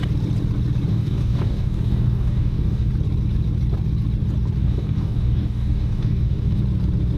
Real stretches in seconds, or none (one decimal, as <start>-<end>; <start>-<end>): 0.0-0.9; 2.9-4.6; 6.6-7.2